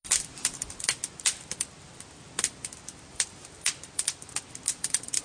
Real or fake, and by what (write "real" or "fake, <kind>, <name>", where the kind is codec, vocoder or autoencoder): real